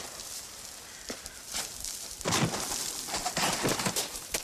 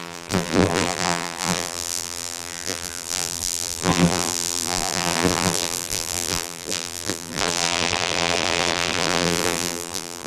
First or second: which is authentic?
first